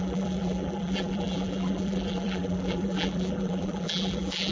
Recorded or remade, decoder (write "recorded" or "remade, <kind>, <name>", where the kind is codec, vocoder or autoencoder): remade, vocoder, BigVGAN v2